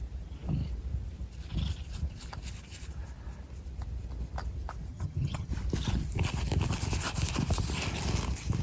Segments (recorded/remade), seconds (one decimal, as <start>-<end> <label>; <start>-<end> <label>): 0.0-4.9 recorded; 4.9-5.5 remade; 5.5-8.6 recorded